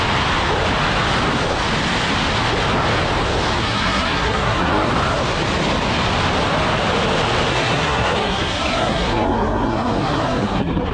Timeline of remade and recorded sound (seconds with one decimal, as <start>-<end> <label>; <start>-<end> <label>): 0.0-3.6 recorded; 3.6-4.9 remade; 4.9-7.5 recorded; 7.5-10.9 remade